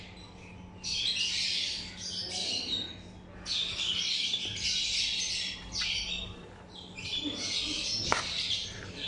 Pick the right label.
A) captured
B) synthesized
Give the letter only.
B